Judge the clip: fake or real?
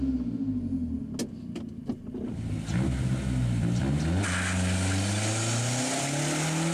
real